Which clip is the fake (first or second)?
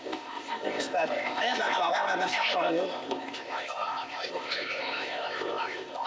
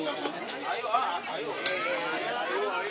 first